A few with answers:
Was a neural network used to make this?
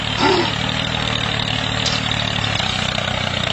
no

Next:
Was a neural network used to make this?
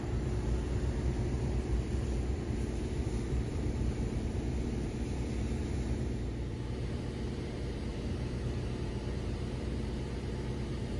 yes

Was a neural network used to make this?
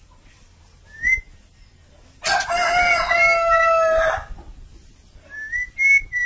no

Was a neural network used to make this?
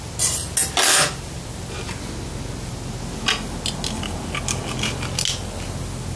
no